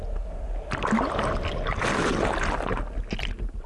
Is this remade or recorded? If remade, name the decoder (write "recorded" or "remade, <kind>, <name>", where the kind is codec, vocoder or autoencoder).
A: recorded